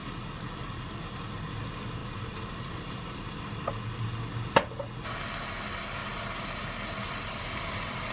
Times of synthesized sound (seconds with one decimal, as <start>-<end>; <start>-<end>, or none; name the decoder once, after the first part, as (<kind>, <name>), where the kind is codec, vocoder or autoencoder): 2.0-3.7 (vocoder, BigVGAN v2); 6.0-7.4